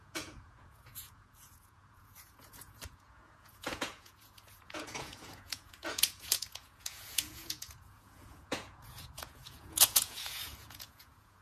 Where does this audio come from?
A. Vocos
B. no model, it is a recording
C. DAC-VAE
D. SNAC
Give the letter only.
A